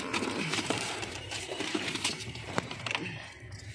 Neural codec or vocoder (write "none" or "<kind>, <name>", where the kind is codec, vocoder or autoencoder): vocoder, BigVGAN v2